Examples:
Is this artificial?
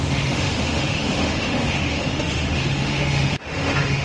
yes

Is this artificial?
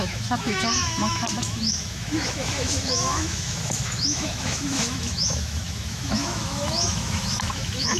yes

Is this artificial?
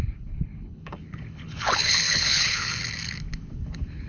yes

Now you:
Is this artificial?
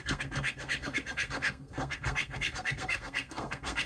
yes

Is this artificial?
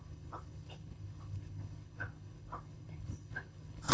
yes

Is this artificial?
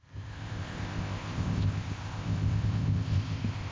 yes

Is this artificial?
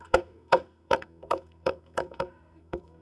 yes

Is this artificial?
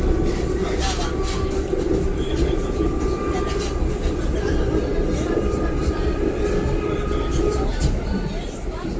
no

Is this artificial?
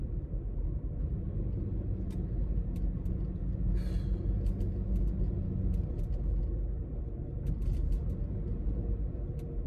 no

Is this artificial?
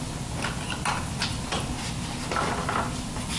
no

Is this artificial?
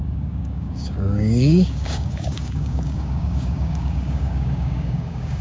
yes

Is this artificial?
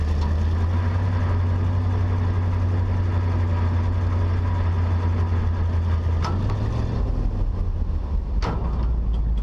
no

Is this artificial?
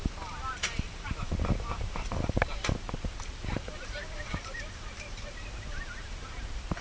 yes